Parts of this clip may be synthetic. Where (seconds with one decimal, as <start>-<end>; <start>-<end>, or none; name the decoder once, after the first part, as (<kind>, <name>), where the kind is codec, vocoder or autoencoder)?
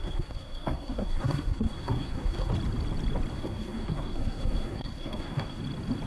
0.0-2.5 (codec, SNAC); 3.3-5.6